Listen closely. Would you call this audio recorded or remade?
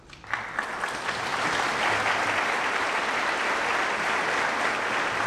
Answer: recorded